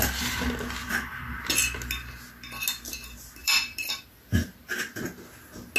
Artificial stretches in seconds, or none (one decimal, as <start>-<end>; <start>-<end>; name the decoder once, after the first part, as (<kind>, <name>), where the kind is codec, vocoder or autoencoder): 0.8-1.4 (vocoder, BigVGAN v2); 3.4-4.0